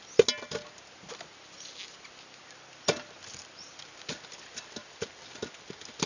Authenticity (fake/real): real